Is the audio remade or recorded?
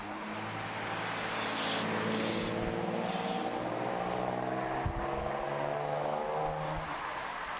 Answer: recorded